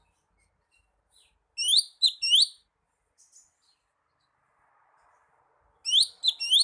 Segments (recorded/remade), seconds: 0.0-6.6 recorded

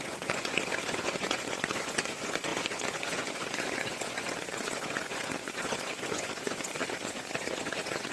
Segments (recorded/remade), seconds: 0.0-8.1 remade